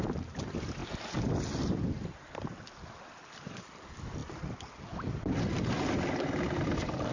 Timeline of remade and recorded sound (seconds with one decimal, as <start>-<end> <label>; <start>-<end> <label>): 0.0-7.1 recorded